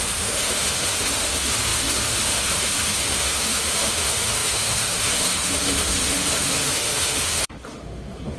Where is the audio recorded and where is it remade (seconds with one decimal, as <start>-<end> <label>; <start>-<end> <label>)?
0.0-8.4 remade